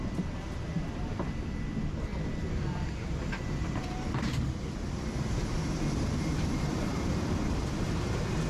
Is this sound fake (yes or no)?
yes